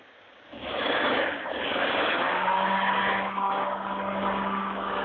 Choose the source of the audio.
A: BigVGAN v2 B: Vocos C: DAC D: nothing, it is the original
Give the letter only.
C